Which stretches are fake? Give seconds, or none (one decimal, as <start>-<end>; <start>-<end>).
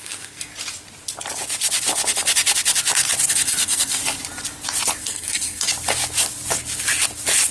0.0-0.5; 3.3-4.0; 5.0-5.7